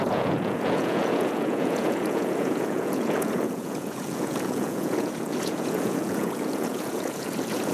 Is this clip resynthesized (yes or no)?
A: yes